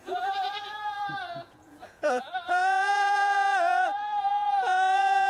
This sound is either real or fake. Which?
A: fake